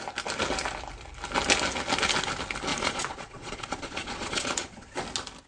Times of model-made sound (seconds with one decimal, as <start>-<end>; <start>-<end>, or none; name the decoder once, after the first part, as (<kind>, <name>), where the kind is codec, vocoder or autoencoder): 2.7-5.0 (vocoder, Vocos)